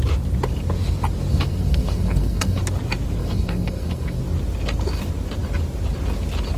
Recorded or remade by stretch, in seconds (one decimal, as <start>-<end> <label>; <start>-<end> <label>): 0.0-1.3 recorded; 1.3-2.6 remade; 2.6-3.2 recorded; 3.2-4.2 remade; 4.2-6.6 recorded